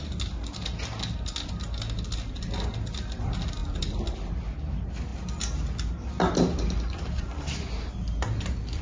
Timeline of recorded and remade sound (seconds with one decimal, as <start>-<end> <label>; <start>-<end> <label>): 0.0-8.8 recorded